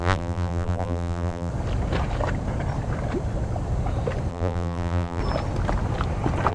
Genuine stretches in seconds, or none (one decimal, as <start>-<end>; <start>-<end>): 1.5-4.3; 5.2-6.5